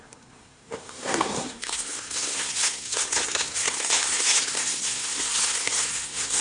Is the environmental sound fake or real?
fake